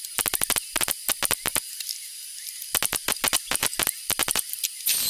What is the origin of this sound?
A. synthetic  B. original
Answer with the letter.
B